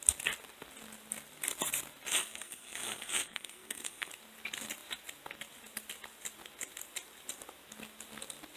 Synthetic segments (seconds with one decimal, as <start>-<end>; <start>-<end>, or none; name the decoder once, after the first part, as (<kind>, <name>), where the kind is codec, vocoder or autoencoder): 2.1-4.1 (codec, SNAC)